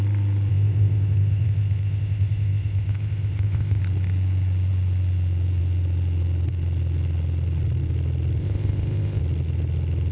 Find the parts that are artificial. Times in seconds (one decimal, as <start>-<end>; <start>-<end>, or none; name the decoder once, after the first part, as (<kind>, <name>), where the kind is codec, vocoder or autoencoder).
0.5-3.8 (codec, ZipCodec); 8.4-9.2